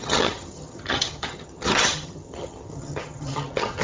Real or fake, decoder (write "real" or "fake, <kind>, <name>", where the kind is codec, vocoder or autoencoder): fake, vocoder, HiFi-GAN